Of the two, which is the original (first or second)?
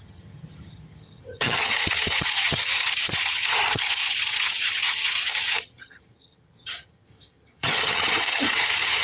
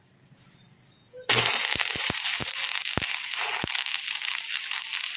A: second